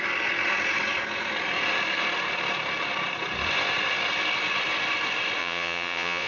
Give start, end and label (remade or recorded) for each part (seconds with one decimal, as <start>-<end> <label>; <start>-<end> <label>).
0.0-5.4 recorded; 5.4-6.3 remade